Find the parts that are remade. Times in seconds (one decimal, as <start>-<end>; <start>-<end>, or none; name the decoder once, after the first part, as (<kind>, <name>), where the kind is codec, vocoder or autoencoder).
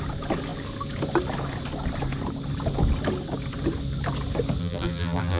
4.6-5.4 (vocoder, BigVGAN v2)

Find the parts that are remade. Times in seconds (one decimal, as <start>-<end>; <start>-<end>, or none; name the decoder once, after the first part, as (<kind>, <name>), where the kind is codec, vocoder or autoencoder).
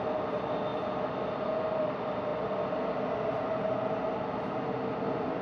none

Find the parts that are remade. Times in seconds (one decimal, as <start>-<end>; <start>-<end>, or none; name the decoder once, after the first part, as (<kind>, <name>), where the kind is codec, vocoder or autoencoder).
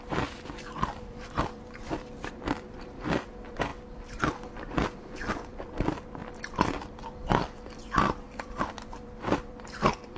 0.0-3.7 (vocoder, BigVGAN v2); 4.2-6.2; 6.7-10.2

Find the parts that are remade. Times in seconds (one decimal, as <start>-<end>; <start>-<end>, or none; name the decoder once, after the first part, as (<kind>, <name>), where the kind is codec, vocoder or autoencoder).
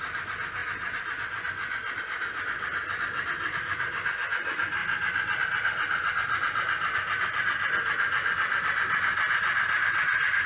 none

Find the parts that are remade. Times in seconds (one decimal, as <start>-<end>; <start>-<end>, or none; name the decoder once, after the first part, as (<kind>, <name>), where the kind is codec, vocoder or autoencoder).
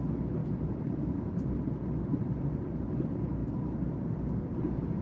0.4-1.5 (vocoder, BigVGAN v2)